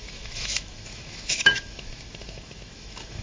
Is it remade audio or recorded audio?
remade